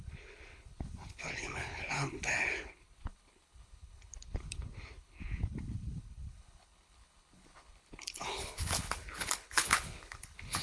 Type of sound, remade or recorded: remade